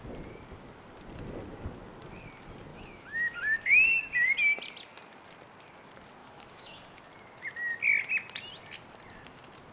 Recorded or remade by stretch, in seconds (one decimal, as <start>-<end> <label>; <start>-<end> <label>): 0.0-2.7 recorded; 2.7-3.4 remade; 3.4-6.2 recorded; 6.2-6.8 remade; 6.8-9.7 recorded